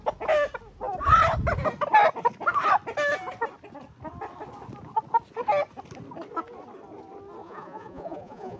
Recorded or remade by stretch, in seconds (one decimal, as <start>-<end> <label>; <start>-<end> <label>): 0.0-7.4 recorded; 7.4-8.6 remade

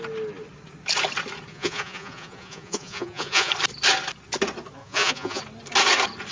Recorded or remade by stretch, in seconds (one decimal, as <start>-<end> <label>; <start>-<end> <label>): 0.0-1.5 recorded; 1.5-3.5 remade; 3.5-4.8 recorded; 4.8-5.4 remade; 5.4-6.3 recorded

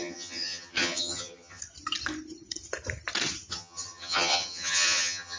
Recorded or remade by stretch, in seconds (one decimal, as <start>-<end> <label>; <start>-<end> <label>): 0.0-1.6 remade; 1.6-3.5 recorded; 3.5-5.4 remade

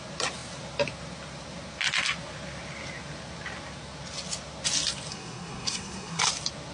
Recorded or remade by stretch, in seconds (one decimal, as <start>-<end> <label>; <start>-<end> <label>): 0.0-5.1 recorded; 5.1-6.2 remade; 6.2-6.7 recorded

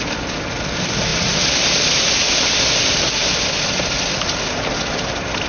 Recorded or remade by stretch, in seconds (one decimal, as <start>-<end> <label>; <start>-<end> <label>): 0.0-5.5 recorded

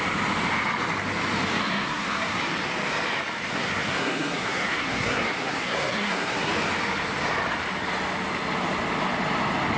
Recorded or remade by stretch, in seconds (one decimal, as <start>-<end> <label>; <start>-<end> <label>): 0.0-1.6 recorded; 1.6-2.4 remade; 2.4-3.5 recorded; 3.5-6.5 remade; 6.5-9.8 recorded

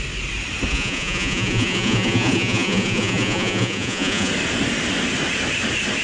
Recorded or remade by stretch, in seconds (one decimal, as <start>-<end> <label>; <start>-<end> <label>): 0.0-0.7 recorded; 0.7-4.3 remade; 4.3-6.0 recorded

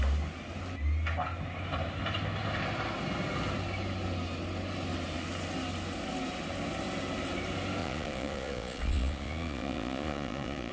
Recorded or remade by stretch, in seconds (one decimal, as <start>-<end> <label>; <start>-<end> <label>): 0.0-7.8 recorded; 7.8-10.7 remade